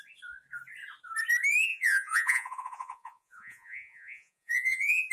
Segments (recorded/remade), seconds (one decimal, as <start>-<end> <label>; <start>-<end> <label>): 0.0-1.7 recorded; 1.7-5.1 remade